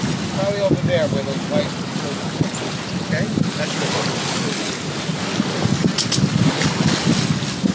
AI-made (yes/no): no